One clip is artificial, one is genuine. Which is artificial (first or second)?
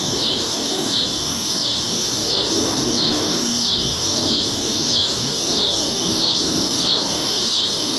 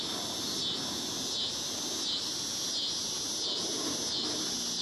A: first